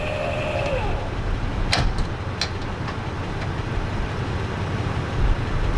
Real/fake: real